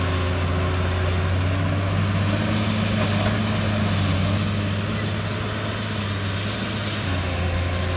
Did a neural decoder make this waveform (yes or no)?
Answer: no